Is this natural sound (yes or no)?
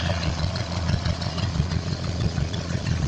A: no